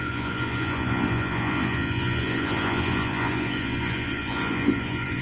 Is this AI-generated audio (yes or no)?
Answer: yes